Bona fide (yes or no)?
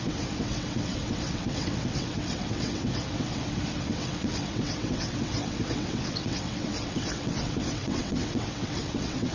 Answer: no